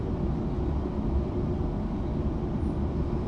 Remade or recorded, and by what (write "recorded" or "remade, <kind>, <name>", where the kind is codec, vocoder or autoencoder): recorded